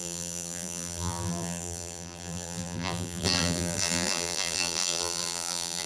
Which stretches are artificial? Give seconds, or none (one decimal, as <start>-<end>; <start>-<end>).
0.0-5.9